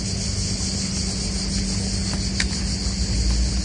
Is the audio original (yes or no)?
yes